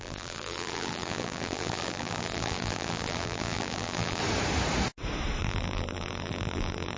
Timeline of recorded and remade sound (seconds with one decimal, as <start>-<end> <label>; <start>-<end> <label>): 0.0-4.2 remade; 4.2-5.4 recorded; 5.4-7.0 remade